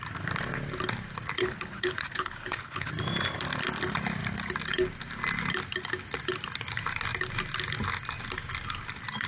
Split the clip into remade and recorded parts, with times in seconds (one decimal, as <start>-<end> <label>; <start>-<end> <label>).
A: 0.0-1.4 recorded; 1.4-2.9 remade; 2.9-9.3 recorded